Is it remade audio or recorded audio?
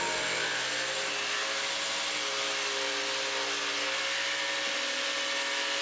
recorded